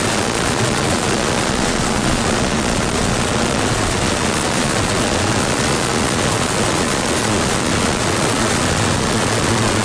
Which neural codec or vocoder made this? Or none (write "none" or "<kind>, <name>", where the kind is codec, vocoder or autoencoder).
vocoder, Vocos